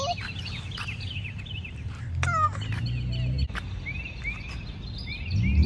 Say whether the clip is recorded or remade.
recorded